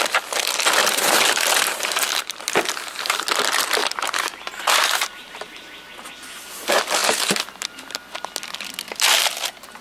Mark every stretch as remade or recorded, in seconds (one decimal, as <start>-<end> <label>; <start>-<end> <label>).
0.0-0.8 recorded; 0.8-2.4 remade; 2.4-3.8 recorded; 3.8-5.9 remade; 5.9-9.8 recorded